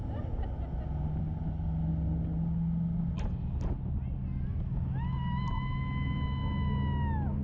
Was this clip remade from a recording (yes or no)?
no